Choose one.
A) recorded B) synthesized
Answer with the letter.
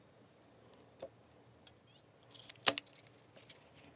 A